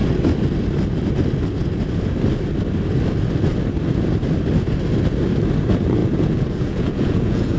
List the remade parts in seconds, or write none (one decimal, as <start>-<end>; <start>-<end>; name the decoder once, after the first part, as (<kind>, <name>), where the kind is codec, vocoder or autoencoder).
6.0-7.6 (vocoder, Vocos)